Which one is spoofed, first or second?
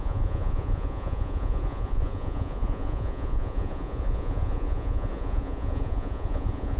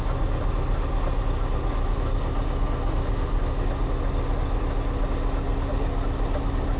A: first